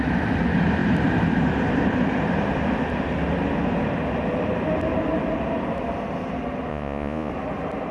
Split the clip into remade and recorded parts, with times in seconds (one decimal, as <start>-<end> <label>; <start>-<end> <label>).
0.0-6.7 recorded; 6.7-7.3 remade; 7.3-7.9 recorded